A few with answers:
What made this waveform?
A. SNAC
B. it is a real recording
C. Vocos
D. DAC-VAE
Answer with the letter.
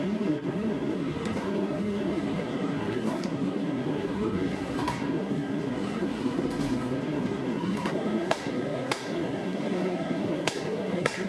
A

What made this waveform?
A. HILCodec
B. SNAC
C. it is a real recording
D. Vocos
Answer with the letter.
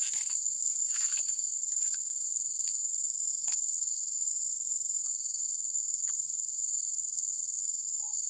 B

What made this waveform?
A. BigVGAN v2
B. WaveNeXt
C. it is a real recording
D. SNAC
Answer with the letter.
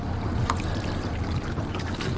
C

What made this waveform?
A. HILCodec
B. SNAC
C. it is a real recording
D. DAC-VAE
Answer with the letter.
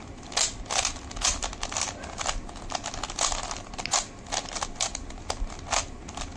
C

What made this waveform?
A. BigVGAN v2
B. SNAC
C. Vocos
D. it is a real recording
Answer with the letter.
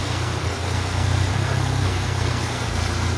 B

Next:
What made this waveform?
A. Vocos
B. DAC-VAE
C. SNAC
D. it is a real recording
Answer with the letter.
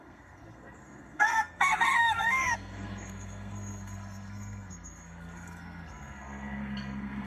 C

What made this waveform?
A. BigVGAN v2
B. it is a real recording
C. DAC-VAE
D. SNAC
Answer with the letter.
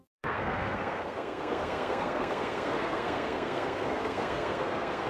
D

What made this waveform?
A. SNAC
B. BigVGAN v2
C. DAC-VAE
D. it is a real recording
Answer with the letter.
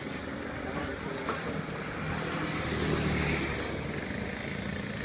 D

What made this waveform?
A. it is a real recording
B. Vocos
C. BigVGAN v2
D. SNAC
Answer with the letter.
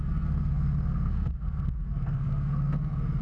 D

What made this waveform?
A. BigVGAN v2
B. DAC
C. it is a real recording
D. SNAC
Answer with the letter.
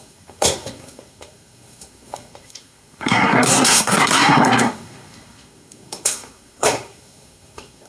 D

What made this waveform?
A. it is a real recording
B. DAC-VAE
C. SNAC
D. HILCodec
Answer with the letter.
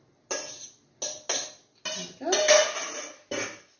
A